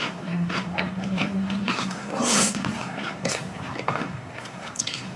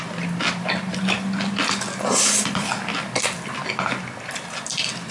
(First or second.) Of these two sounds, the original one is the second